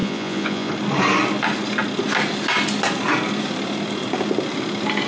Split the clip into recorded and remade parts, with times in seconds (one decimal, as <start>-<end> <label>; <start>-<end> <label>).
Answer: 0.0-0.7 remade; 0.7-5.1 recorded